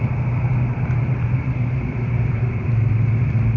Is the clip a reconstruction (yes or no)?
yes